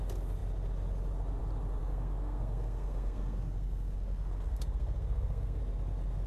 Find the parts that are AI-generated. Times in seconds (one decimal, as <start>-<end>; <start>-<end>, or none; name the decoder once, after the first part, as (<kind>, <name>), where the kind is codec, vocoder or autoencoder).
1.8-5.6 (codec, SNAC)